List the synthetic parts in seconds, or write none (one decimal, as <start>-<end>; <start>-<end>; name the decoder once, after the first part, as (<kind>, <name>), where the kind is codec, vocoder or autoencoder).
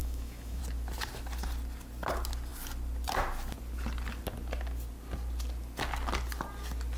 0.0-0.6 (autoencoder, DAC-VAE)